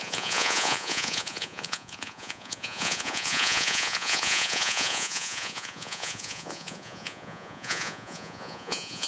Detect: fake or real fake